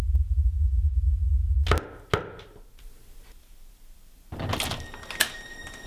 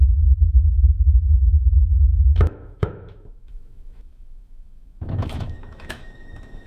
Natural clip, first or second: first